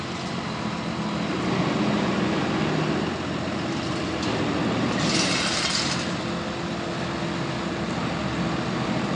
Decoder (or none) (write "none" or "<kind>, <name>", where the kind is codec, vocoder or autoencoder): none